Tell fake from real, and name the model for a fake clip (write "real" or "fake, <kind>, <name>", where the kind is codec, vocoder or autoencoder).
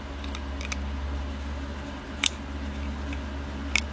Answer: real